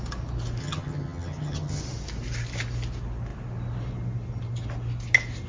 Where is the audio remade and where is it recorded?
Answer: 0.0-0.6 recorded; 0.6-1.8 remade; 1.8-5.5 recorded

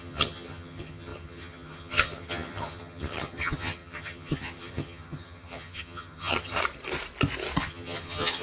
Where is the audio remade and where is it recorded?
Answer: 0.0-6.6 remade; 6.6-7.6 recorded; 7.6-8.4 remade

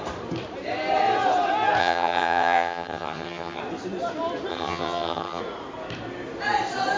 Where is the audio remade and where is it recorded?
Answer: 0.0-1.8 recorded; 1.8-3.6 remade; 3.6-4.5 recorded; 4.5-5.4 remade; 5.4-7.0 recorded

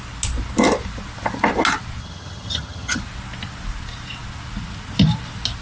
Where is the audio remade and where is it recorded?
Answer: 0.0-2.0 recorded; 2.0-3.0 remade; 3.0-5.6 recorded

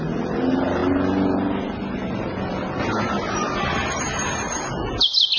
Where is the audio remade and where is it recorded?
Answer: 0.0-5.4 recorded

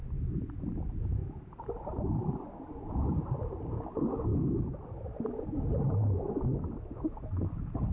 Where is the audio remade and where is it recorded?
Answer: 0.0-7.9 recorded

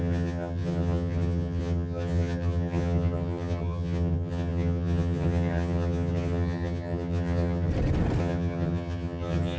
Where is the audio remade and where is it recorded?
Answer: 0.0-7.7 remade; 7.7-8.2 recorded; 8.2-9.6 remade